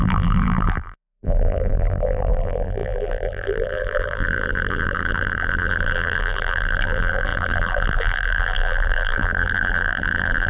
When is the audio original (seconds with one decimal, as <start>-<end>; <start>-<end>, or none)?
none